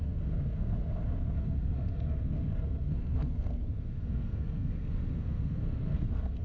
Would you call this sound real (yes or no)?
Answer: no